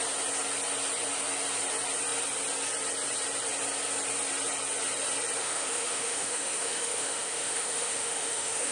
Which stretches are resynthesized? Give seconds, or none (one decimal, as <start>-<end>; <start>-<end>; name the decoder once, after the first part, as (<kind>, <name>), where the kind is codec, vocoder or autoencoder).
5.4-8.7 (autoencoder, DAC-VAE)